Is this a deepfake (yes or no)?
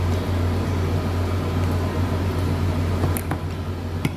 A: no